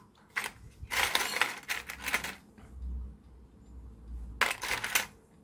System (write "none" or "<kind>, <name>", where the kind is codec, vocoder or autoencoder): none